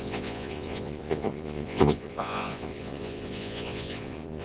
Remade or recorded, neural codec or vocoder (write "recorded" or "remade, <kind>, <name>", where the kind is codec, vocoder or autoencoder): remade, vocoder, Vocos